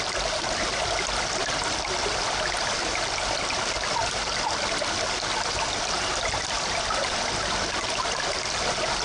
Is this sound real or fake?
real